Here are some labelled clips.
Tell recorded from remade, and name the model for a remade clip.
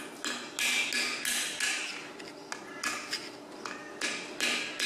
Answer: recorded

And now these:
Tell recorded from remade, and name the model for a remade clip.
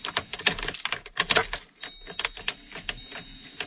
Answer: recorded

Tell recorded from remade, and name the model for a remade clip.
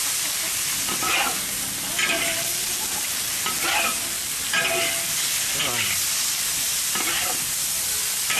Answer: recorded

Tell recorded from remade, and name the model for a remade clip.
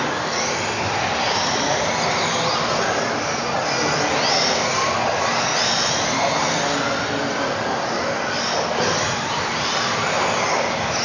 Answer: recorded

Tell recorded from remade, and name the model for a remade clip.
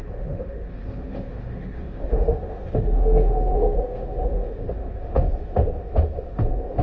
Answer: remade, autoencoder, DAC-VAE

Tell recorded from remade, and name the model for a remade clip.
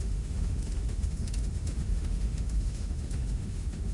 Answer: remade, autoencoder, DAC-VAE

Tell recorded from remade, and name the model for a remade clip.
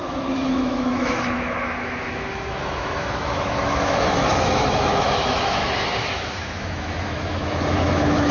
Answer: remade, autoencoder, DAC-VAE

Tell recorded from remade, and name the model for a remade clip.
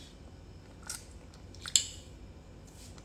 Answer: recorded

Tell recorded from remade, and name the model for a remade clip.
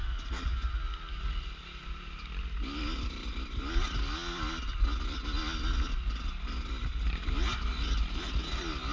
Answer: recorded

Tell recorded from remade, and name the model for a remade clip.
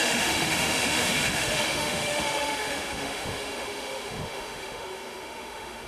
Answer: remade, autoencoder, DAC-VAE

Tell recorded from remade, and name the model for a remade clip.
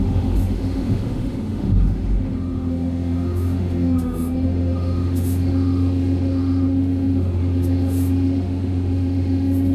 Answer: remade, autoencoder, DAC-VAE